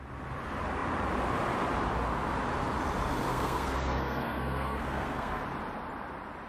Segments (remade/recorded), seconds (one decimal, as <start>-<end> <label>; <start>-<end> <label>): 0.0-3.3 recorded; 3.3-5.4 remade; 5.4-6.5 recorded